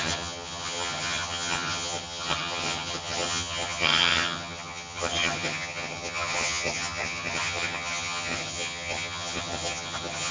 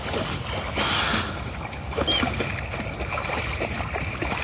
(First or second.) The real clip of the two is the second